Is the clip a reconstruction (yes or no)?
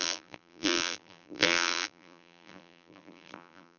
yes